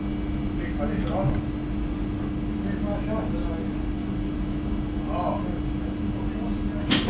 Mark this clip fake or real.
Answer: real